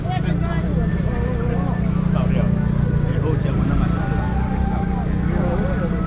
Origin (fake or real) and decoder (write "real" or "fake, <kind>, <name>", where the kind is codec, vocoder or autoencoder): real